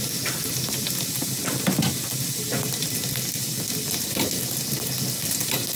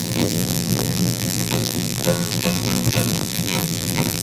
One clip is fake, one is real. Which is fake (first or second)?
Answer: second